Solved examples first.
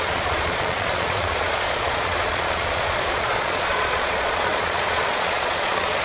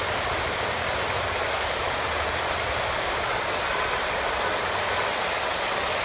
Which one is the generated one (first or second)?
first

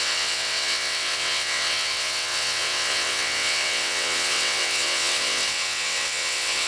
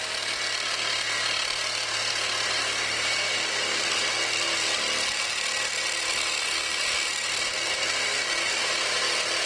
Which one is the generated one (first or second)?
first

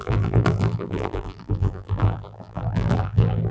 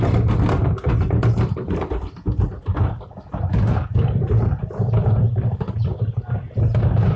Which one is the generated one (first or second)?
first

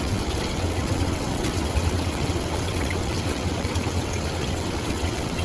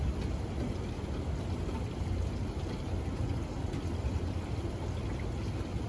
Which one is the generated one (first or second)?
first